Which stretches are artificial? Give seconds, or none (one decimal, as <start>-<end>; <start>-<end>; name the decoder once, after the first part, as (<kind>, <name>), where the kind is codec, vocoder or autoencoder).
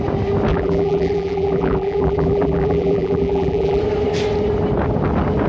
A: 0.5-3.8 (vocoder, BigVGAN v2)